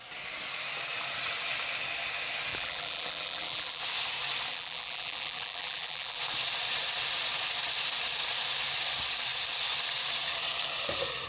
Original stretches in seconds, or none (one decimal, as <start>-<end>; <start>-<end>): 0.0-2.5; 3.8-4.5; 6.2-11.3

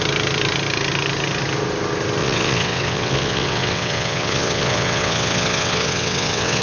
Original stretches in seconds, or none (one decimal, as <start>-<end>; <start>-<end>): 0.0-2.2